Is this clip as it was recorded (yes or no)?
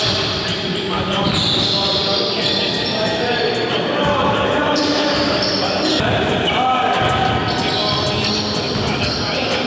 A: yes